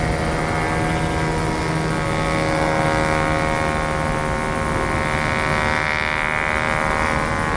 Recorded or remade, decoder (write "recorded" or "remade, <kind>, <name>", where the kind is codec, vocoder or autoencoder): recorded